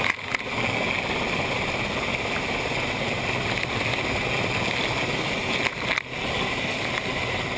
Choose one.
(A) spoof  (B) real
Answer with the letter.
B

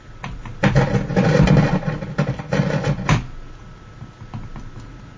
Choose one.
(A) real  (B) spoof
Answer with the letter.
A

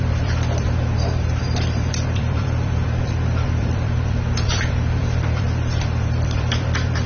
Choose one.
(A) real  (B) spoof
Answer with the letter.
B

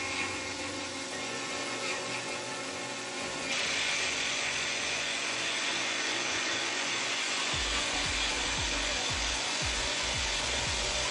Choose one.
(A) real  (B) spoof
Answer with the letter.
B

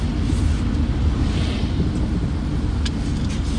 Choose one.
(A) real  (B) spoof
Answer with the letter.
A